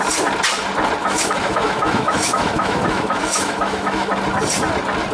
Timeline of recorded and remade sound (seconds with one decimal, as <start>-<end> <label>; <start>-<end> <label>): 0.0-1.0 recorded; 1.0-4.1 remade; 4.1-5.1 recorded